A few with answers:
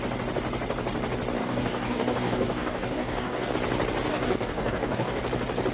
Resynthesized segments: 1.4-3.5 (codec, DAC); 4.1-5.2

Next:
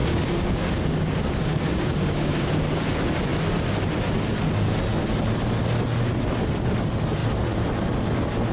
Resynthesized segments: 0.0-2.5 (codec, DAC)

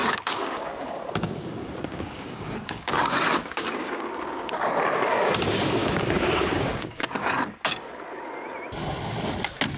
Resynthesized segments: 0.0-4.7 (codec, DAC); 5.8-7.3

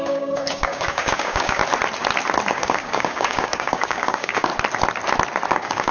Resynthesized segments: 0.0-1.6 (codec, DAC); 2.5-4.5; 5.5-5.9